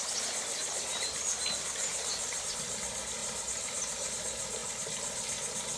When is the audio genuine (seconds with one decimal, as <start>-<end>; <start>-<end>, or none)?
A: 0.0-3.2; 4.1-5.8